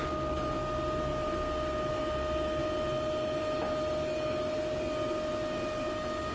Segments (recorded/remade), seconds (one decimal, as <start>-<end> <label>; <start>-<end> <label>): 0.0-6.3 recorded

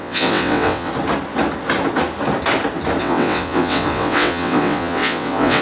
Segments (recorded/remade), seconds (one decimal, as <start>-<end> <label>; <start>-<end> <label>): 0.0-0.9 remade; 0.9-3.0 recorded; 3.0-5.6 remade

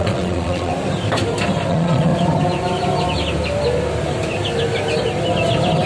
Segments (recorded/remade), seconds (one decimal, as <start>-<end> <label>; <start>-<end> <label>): 0.0-0.7 remade; 0.7-1.7 recorded; 1.7-2.1 remade; 2.1-5.9 recorded

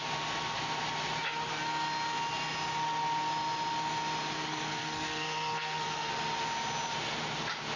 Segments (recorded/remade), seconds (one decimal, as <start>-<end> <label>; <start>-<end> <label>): 0.0-4.5 recorded; 4.5-6.1 remade; 6.1-7.8 recorded

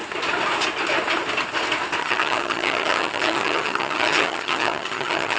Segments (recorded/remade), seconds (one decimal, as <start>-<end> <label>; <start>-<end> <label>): 0.0-2.0 recorded; 2.0-5.4 remade

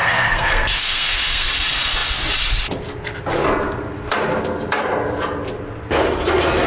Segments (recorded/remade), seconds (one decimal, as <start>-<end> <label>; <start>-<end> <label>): 0.0-1.5 remade; 1.5-6.7 recorded